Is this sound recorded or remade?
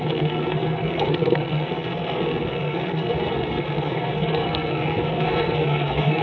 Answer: remade